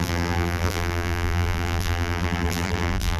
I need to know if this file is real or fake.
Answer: fake